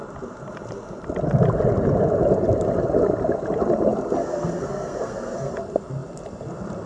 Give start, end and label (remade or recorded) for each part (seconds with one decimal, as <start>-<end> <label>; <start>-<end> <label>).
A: 0.0-4.2 recorded; 4.2-5.5 remade; 5.5-6.9 recorded